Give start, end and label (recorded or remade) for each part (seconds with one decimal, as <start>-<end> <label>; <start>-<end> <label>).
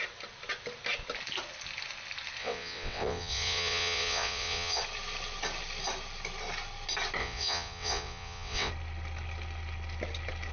0.0-2.4 recorded; 2.4-4.8 remade; 4.8-7.2 recorded; 7.2-8.7 remade; 8.7-10.5 recorded